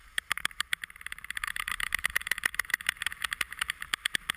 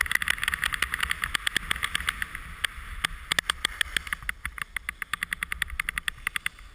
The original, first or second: second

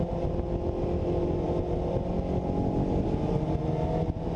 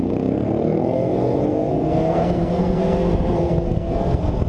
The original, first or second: first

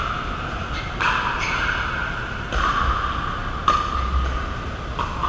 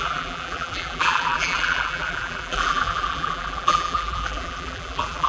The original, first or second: first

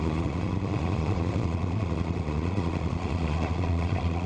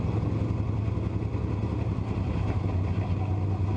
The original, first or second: second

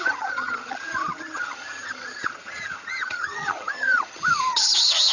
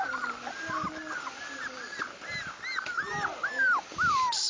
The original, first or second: second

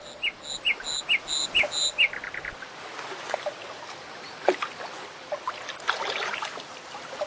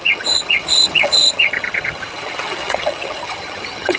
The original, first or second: first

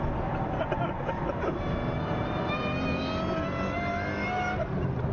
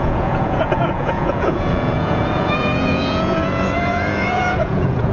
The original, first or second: first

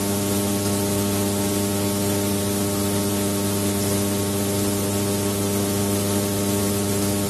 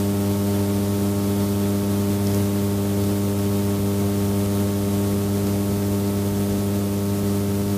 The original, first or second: first